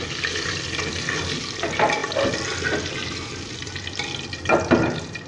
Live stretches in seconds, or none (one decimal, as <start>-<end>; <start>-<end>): 0.0-5.3